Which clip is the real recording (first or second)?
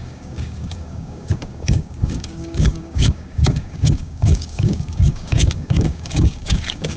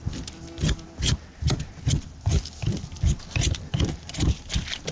second